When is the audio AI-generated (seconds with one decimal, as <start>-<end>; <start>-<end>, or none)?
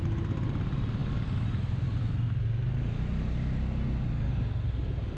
none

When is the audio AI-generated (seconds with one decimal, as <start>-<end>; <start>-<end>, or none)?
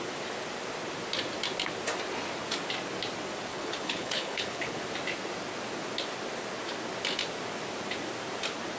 3.5-4.8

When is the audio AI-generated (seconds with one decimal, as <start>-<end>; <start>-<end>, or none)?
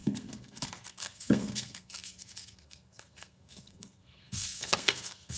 0.0-5.4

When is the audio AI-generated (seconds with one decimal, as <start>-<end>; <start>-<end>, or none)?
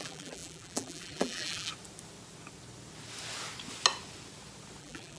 0.0-1.7; 4.8-5.2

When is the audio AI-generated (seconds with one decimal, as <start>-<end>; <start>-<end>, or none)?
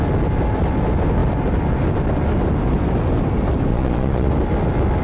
3.7-4.3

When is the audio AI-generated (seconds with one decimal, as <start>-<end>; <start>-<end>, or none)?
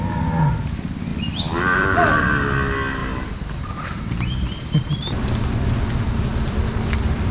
1.1-2.2; 3.0-5.7; 6.3-7.3